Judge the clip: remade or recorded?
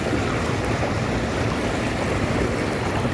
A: remade